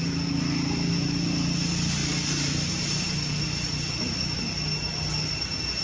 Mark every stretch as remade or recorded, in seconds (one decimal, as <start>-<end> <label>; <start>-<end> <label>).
0.0-5.8 recorded